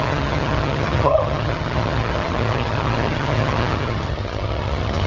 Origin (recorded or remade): remade